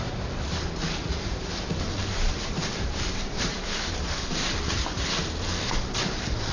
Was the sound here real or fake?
fake